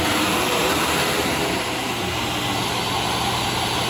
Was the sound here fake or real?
real